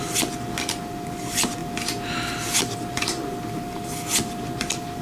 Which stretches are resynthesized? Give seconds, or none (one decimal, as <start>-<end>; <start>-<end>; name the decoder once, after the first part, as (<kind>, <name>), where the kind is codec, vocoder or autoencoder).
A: none